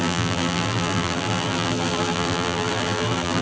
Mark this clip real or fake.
fake